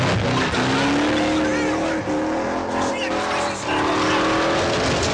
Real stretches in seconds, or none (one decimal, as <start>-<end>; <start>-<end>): 0.0-5.1